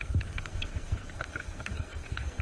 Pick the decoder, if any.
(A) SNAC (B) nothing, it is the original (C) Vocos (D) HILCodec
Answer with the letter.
A